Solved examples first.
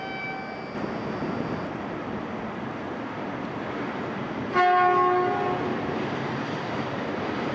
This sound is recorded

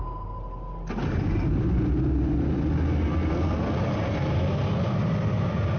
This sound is recorded